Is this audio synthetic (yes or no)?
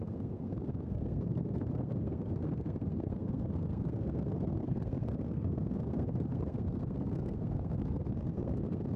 yes